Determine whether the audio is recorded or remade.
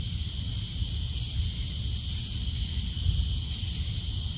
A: recorded